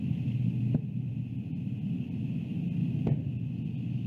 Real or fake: real